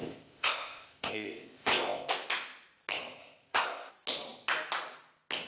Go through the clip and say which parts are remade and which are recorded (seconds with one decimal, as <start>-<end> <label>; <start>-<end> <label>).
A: 0.0-2.1 remade; 2.1-3.2 recorded; 3.2-3.9 remade; 3.9-5.5 recorded